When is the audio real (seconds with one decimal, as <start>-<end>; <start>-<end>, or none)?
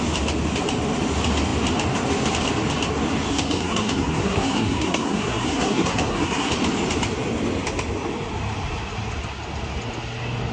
0.0-3.3; 6.5-10.5